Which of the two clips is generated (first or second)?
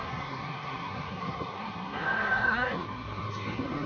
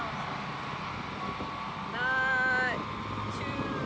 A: first